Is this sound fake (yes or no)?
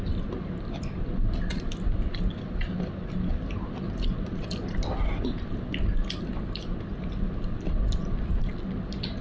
no